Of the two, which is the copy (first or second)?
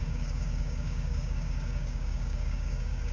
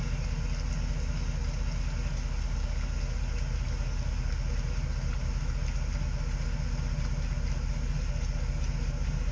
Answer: first